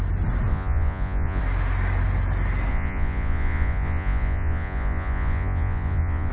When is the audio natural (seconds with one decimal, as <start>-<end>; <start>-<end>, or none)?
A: 0.0-0.5; 1.4-2.7